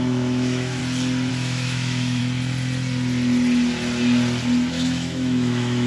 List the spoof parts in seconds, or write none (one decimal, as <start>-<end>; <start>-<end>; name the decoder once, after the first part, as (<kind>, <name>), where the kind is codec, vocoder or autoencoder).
0.0-0.8 (autoencoder, DAC-VAE); 1.3-2.2; 4.7-5.9

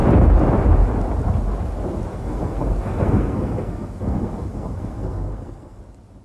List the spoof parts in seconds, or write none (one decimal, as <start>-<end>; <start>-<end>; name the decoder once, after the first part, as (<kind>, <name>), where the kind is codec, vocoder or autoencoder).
2.1-5.8 (codec, SNAC)

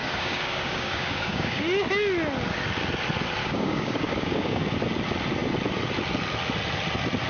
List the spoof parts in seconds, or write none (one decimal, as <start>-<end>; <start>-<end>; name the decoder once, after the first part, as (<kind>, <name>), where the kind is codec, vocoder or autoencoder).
0.0-1.6 (codec, DAC); 3.4-4.6

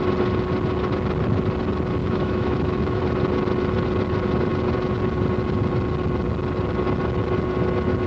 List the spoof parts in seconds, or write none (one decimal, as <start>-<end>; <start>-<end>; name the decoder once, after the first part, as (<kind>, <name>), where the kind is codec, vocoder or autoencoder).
2.0-3.0 (autoencoder, DAC-VAE)

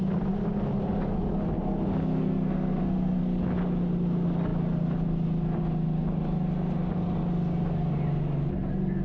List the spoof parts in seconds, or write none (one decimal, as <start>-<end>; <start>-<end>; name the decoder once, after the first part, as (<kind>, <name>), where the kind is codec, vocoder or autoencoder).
2.2-3.2 (codec, SNAC)

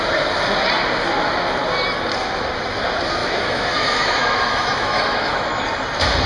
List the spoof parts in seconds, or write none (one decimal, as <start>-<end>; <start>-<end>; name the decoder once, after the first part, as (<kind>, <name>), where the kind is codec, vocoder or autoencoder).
3.2-5.6 (autoencoder, DAC-VAE)